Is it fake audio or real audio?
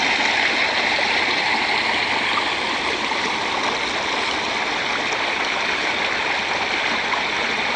real